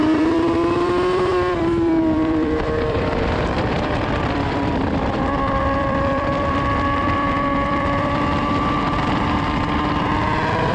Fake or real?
fake